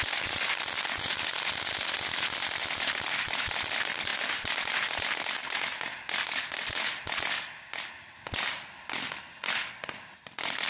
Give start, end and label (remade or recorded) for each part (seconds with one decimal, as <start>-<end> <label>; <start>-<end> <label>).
0.0-10.7 recorded